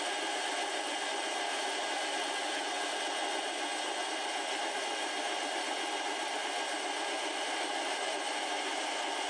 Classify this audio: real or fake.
real